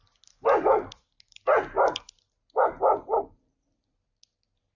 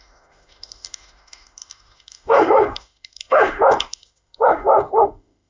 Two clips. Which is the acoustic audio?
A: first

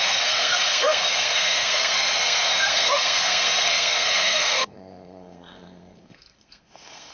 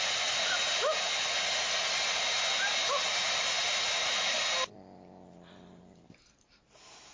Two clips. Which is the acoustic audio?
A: second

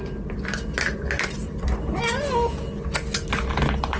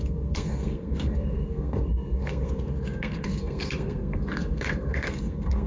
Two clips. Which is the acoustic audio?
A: first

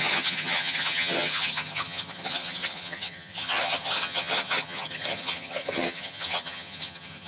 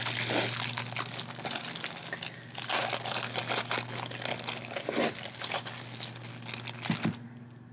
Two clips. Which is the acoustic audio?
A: second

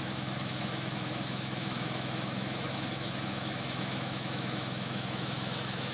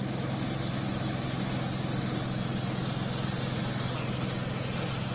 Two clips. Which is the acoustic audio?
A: second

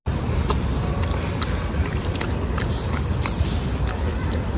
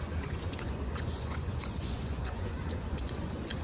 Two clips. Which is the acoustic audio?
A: first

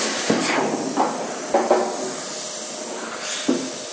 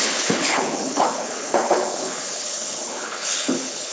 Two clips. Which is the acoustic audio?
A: first